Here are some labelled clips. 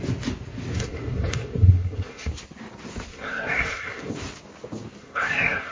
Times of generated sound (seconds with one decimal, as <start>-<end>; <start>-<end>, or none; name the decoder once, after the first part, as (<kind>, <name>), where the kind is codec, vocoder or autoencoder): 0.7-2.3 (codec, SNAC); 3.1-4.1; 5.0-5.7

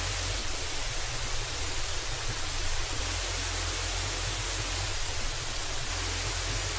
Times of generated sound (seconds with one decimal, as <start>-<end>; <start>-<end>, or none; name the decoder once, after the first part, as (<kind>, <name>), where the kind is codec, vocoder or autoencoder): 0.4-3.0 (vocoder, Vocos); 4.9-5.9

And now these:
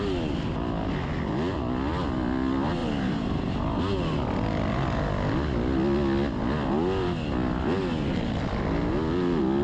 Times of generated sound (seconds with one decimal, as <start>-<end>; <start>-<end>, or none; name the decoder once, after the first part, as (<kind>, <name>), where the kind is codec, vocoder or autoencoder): 2.8-3.8 (vocoder, BigVGAN v2)